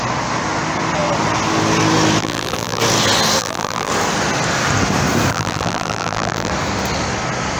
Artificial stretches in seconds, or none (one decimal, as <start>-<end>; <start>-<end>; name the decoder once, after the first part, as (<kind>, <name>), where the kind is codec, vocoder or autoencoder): 2.2-2.8 (vocoder, BigVGAN v2); 3.4-3.9; 5.3-6.5